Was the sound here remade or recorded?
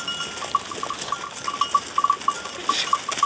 recorded